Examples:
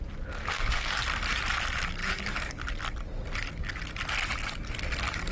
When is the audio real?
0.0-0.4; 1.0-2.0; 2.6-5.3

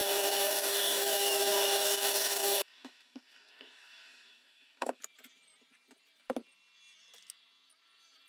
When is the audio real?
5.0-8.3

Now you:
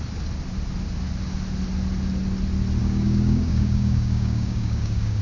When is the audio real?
0.0-2.8